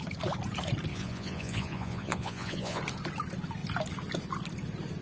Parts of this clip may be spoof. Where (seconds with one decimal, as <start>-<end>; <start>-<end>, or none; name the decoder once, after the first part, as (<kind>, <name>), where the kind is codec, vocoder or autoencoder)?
0.9-2.8 (vocoder, Vocos)